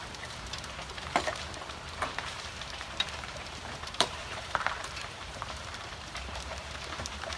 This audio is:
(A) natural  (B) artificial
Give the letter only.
B